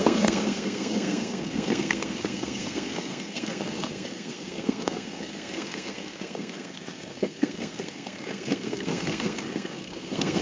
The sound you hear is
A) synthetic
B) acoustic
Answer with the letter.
A